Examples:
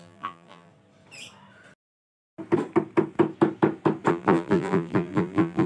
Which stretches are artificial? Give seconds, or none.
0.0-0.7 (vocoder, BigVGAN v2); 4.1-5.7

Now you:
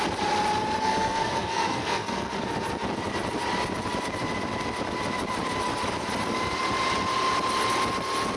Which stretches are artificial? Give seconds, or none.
0.8-2.4 (codec, SNAC)